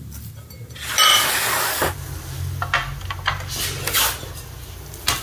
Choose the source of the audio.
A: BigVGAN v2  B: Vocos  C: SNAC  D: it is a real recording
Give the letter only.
D